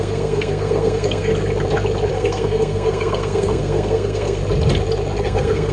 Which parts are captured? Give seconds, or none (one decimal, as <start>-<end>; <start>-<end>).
1.3-2.1; 4.4-5.2